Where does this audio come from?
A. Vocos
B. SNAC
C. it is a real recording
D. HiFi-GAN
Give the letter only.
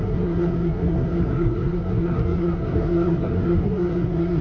B